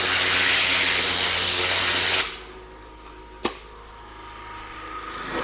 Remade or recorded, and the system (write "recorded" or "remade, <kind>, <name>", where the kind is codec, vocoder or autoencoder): recorded